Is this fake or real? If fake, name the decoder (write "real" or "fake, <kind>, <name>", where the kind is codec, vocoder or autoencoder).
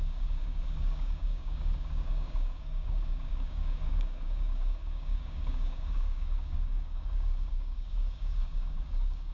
fake, codec, DAC